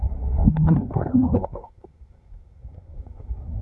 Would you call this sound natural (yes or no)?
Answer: no